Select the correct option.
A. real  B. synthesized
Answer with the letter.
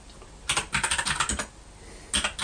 A